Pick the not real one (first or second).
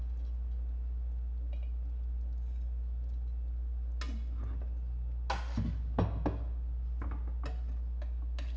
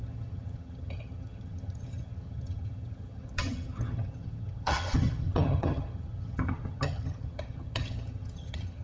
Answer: second